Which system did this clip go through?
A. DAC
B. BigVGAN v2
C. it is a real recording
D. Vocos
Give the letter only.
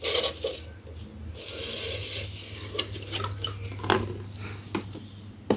C